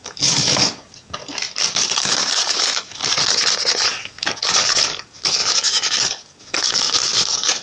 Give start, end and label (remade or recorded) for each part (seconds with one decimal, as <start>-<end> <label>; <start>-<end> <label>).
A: 0.0-1.2 remade; 1.2-1.7 recorded; 1.7-3.0 remade; 3.0-3.9 recorded; 3.9-7.6 remade